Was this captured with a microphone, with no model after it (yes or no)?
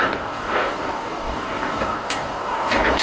no